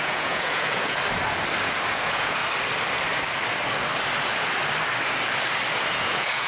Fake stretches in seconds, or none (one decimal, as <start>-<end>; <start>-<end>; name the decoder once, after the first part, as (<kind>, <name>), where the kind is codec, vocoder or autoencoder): 0.0-1.0 (vocoder, Vocos); 1.9-2.4; 5.9-6.5